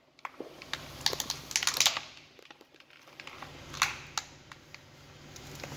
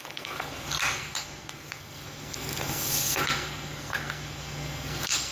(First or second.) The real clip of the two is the first